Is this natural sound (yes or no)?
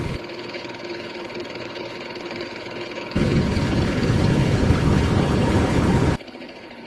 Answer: no